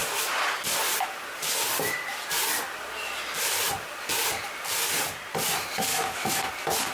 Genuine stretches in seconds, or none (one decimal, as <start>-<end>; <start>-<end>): 0.0-5.9; 6.5-6.9